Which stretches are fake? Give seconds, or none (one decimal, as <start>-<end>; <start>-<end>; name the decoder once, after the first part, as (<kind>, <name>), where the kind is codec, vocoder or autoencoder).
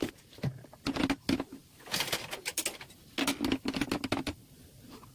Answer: none